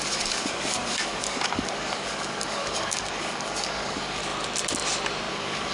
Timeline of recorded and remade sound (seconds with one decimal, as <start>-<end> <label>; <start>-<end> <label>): 0.0-4.2 remade; 4.2-5.3 recorded; 5.3-5.7 remade